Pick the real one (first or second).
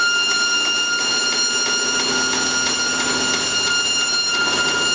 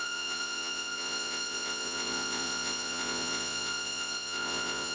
first